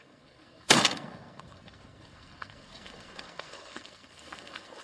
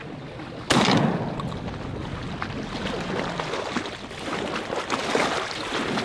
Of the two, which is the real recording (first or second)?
second